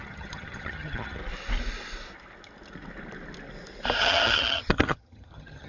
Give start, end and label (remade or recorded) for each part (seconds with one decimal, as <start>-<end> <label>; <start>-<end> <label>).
0.0-1.2 remade; 1.2-4.0 recorded; 4.0-5.7 remade